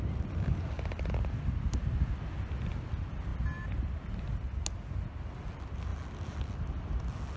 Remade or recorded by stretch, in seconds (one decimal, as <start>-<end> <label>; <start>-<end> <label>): 0.0-7.4 recorded